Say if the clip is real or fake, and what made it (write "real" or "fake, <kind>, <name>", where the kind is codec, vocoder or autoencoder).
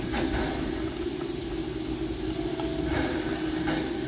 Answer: real